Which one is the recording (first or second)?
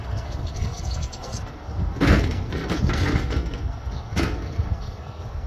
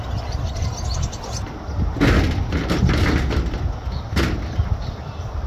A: second